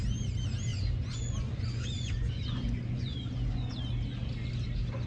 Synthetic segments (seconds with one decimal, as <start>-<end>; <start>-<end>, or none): 0.7-3.8